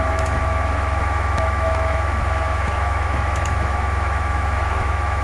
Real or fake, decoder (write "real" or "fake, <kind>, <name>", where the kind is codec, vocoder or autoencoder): fake, autoencoder, DAC-VAE